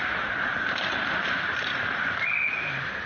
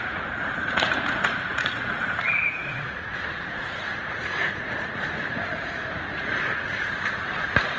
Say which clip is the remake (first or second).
second